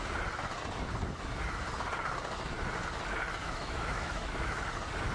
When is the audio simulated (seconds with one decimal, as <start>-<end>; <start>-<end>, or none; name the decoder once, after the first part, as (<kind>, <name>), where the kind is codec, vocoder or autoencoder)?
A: 3.4-4.6 (autoencoder, DAC-VAE)